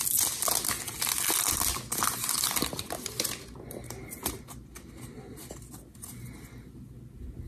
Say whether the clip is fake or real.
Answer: real